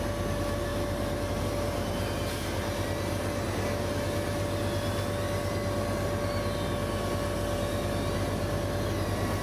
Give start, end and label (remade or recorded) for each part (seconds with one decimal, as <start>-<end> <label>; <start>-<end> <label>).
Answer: 0.0-9.4 recorded